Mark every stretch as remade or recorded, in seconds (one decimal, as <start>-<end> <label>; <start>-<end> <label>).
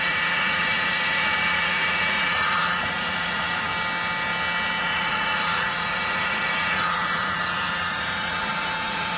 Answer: 0.0-3.7 remade; 3.7-4.8 recorded; 4.8-9.2 remade